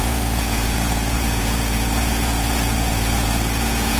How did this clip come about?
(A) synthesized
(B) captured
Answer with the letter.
A